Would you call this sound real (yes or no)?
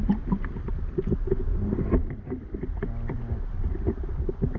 yes